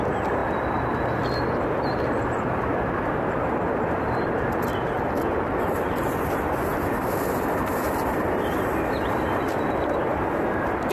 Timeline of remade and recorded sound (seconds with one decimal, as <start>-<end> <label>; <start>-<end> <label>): 0.0-10.9 recorded